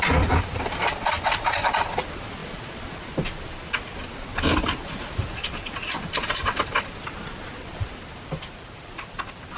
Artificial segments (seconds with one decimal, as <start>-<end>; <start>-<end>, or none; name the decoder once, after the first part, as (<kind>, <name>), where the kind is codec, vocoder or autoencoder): none